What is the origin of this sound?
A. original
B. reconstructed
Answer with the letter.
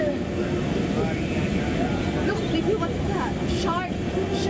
A